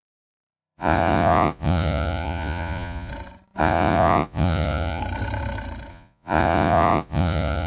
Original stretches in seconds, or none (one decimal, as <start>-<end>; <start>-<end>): 3.1-3.6; 5.0-5.9